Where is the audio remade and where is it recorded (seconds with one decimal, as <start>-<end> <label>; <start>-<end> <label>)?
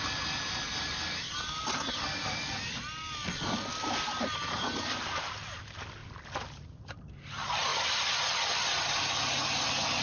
0.0-10.0 recorded